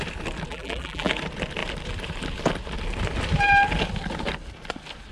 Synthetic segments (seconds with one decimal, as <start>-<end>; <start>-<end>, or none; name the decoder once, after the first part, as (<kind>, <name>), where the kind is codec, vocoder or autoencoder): 0.5-1.1 (vocoder, BigVGAN v2)